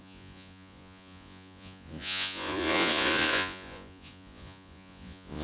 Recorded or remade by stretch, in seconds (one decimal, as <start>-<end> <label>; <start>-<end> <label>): 0.0-5.4 remade